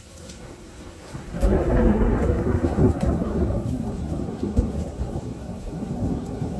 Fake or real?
fake